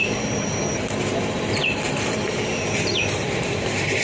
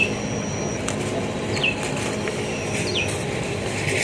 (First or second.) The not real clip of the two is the first